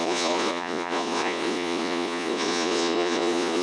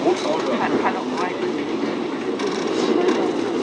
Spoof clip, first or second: first